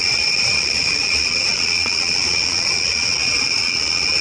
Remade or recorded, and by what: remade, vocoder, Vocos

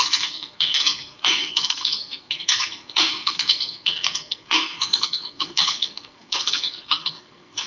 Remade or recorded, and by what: remade, codec, SNAC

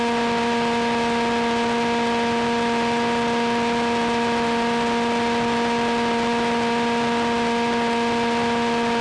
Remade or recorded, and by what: recorded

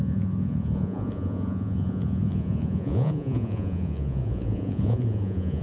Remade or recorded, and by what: remade, vocoder, Vocos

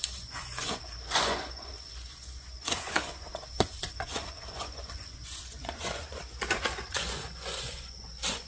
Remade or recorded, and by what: remade, vocoder, Vocos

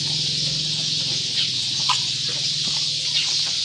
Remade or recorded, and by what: recorded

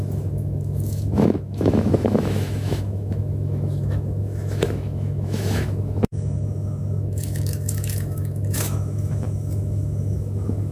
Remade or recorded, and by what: remade, autoencoder, DAC-VAE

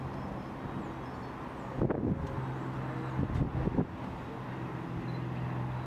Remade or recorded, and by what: recorded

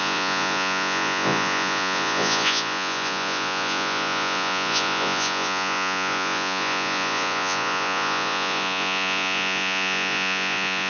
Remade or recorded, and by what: remade, vocoder, Vocos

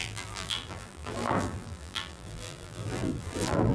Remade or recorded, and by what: remade, vocoder, BigVGAN v2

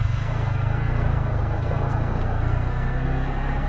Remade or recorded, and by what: remade, codec, SNAC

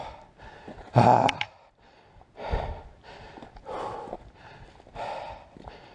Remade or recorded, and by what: recorded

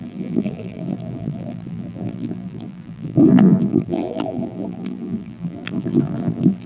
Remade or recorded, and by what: remade, vocoder, BigVGAN v2